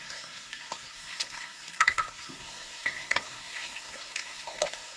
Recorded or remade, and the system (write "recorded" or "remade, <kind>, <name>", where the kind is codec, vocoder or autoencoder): remade, codec, SNAC